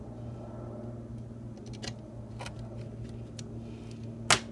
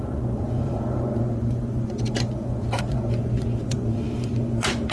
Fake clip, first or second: second